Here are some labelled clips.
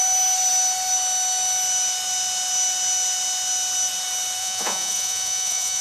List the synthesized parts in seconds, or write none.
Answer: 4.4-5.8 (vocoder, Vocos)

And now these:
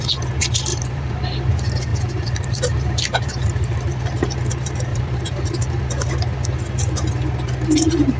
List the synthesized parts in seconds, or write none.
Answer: 0.7-1.2 (vocoder, BigVGAN v2); 1.9-4.3; 4.9-5.8

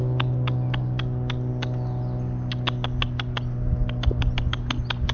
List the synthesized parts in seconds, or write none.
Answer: none

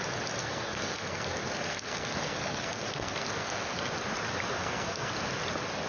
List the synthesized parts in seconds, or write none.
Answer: 0.4-3.9 (codec, SNAC); 4.5-5.1